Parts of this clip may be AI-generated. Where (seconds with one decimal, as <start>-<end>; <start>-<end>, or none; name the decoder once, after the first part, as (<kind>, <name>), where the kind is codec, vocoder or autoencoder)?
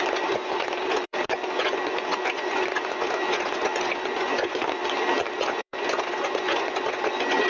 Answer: 0.0-4.8 (vocoder, Vocos); 5.4-7.5